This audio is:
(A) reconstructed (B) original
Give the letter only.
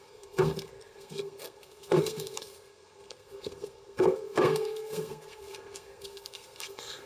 A